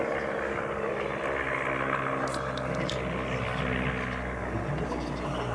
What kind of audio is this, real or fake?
real